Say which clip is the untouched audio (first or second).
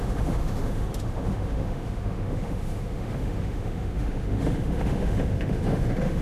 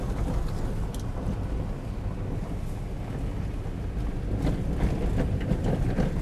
second